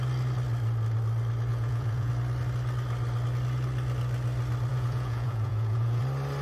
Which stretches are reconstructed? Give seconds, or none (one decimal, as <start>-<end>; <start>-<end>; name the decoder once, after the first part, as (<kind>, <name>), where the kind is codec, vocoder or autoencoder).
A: 1.5-2.1 (vocoder, Vocos); 4.7-6.0